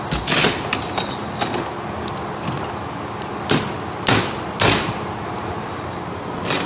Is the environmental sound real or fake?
real